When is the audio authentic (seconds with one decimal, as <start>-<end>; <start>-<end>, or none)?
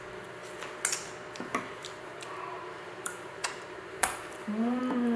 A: 0.0-1.8; 4.8-5.2